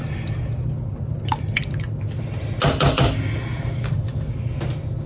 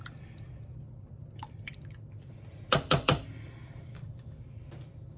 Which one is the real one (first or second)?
first